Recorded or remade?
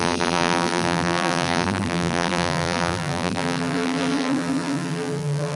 remade